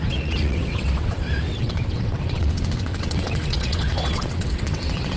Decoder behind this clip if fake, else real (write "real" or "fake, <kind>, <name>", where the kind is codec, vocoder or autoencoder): fake, vocoder, WaveNeXt